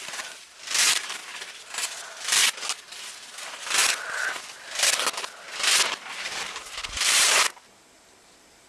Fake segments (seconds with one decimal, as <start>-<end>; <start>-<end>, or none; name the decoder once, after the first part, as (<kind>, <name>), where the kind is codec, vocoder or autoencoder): 0.0-1.2 (vocoder, BigVGAN v2); 2.0-2.4; 3.4-3.8; 6.1-8.7